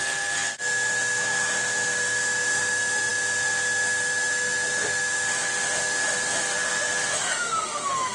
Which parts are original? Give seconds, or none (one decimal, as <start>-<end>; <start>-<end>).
none